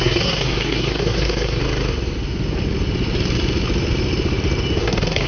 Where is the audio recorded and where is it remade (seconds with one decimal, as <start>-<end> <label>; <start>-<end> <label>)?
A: 0.0-1.6 remade; 1.6-4.8 recorded; 4.8-5.3 remade